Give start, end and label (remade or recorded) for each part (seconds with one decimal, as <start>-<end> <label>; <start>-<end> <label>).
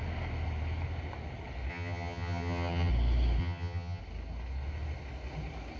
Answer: 0.0-1.7 recorded; 1.7-2.9 remade; 2.9-3.4 recorded; 3.4-4.0 remade; 4.0-5.8 recorded